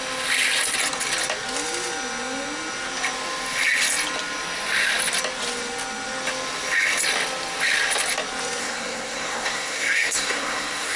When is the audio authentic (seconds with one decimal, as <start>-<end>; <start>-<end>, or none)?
0.0-8.6